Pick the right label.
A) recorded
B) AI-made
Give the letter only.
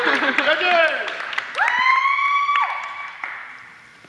B